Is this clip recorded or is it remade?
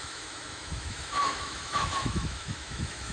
remade